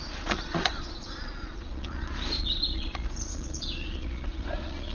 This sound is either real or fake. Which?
fake